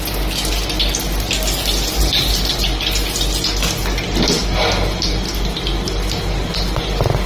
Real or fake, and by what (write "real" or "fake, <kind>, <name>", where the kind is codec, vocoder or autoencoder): real